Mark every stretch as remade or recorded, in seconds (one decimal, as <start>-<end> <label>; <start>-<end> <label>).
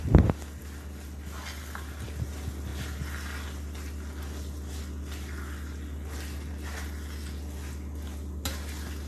0.0-9.1 recorded